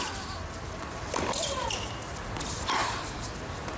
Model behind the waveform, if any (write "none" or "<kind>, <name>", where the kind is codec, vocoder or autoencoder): none